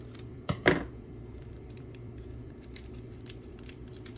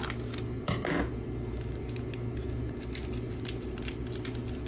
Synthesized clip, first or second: first